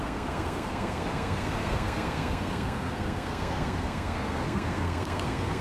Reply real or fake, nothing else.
fake